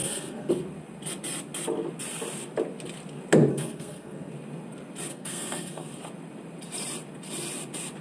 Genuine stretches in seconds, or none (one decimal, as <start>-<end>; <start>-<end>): 0.5-3.5; 4.3-5.1; 5.9-8.0